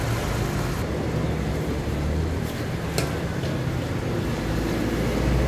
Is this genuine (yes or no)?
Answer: yes